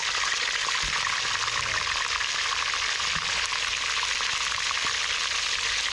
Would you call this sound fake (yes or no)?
no